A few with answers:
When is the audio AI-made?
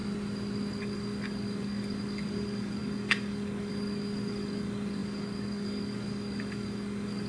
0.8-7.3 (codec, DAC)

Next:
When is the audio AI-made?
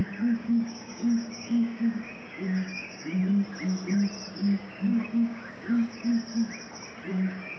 0.0-3.2 (codec, DAC); 4.3-6.1; 7.1-7.6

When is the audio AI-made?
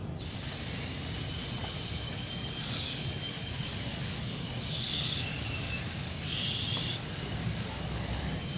1.6-6.3 (codec, DAC); 6.9-8.2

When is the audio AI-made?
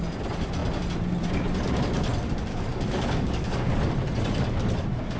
2.5-3.7 (codec, DAC)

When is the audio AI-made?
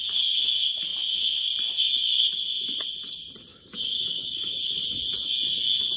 3.5-4.6 (codec, DAC)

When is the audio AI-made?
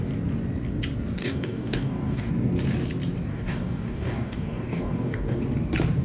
1.2-2.3 (codec, DAC); 3.3-5.4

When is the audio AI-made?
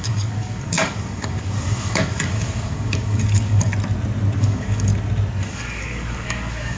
0.0-3.7 (codec, DAC); 4.4-4.9; 5.4-6.8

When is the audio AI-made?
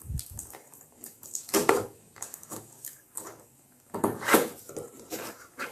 0.0-4.5 (codec, DAC); 5.1-5.7